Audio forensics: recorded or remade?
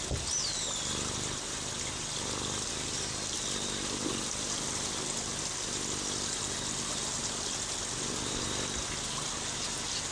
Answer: recorded